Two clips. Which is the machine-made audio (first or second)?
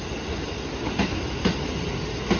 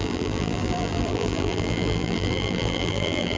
second